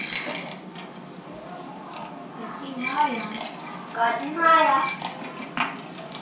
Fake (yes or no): no